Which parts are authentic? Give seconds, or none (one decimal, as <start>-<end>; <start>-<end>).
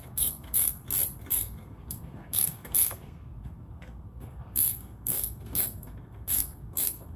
0.8-1.3